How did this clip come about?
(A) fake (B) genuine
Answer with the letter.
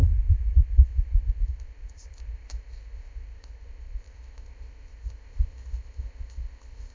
A